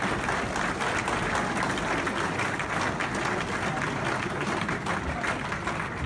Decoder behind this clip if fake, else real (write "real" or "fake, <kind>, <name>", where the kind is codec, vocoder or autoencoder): real